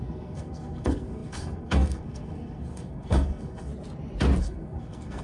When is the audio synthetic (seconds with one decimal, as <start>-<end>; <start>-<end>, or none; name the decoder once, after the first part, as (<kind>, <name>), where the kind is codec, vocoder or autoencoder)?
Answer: 0.0-3.7 (codec, SNAC); 4.4-5.2